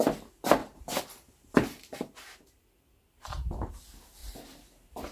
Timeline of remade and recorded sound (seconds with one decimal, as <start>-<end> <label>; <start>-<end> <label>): 0.0-0.6 recorded; 0.6-3.7 remade; 3.7-5.1 recorded